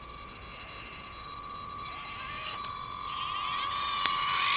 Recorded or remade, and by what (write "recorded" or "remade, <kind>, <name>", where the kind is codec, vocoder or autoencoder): recorded